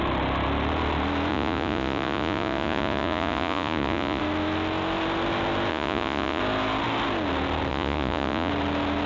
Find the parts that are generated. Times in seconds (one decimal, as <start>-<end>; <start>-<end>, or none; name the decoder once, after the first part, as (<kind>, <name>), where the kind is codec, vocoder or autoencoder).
1.3-4.2 (vocoder, Vocos); 5.7-6.4; 7.7-8.5

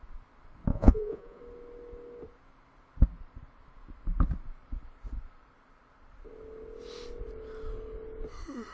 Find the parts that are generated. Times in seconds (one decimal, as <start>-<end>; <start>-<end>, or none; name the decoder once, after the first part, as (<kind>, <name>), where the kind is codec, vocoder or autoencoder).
0.7-1.4 (vocoder, Vocos)

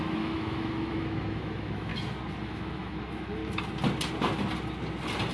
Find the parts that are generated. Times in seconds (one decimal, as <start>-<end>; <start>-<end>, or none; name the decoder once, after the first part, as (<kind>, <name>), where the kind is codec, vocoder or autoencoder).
0.0-1.9 (autoencoder, DAC-VAE); 2.4-3.4

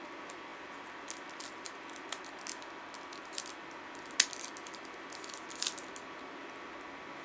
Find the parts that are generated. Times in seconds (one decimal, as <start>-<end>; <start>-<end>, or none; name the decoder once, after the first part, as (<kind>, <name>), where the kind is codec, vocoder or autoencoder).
none

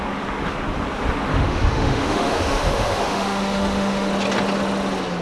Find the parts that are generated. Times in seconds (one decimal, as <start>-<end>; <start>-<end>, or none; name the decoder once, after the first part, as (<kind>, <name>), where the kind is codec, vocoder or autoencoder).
1.3-4.1 (autoencoder, DAC-VAE)

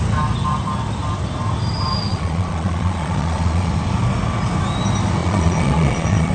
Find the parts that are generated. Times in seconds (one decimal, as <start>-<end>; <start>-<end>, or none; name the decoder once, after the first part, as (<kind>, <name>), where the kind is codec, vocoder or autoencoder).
2.1-3.7 (vocoder, Vocos); 5.2-6.3

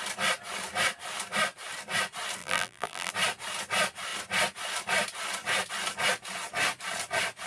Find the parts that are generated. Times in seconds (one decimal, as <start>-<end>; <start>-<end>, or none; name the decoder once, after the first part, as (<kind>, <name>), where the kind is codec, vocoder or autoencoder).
2.4-3.1 (vocoder, BigVGAN v2)